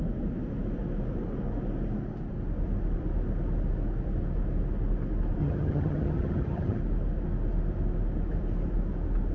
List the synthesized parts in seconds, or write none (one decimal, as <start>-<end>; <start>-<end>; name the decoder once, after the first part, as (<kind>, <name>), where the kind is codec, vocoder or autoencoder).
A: 5.4-6.8 (vocoder, HiFi-GAN)